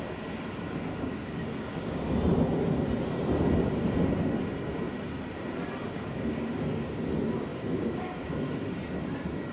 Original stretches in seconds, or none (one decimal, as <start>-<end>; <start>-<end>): 0.0-0.9; 2.1-5.8; 6.6-7.5; 8.3-9.5